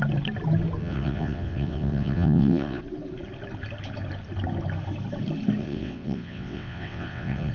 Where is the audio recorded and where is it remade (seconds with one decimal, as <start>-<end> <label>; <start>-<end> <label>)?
0.0-0.8 recorded; 0.8-2.8 remade; 2.8-5.6 recorded; 5.6-7.5 remade